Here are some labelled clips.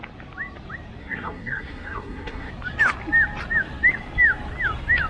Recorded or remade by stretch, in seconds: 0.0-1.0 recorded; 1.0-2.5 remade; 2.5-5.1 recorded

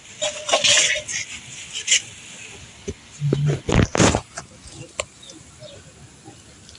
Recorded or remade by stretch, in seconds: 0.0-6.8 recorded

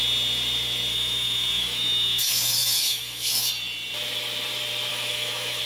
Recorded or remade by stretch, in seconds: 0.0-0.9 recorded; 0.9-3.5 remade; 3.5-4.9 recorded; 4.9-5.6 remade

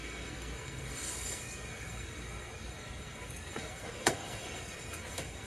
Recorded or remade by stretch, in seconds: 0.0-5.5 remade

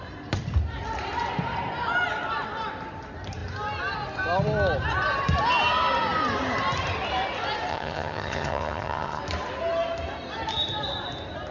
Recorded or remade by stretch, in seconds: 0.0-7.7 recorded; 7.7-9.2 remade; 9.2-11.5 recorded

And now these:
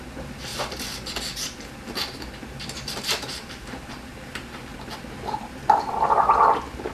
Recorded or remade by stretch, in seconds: 0.0-6.9 recorded

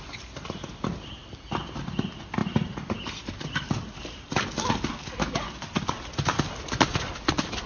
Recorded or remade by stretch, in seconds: 0.0-7.7 recorded

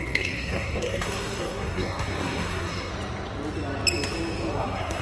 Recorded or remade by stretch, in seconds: 0.0-2.9 remade; 2.9-4.5 recorded; 4.5-5.0 remade